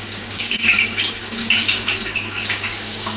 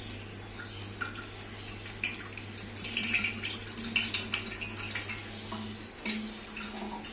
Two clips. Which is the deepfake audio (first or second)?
first